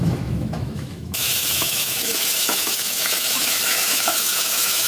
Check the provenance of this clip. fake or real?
fake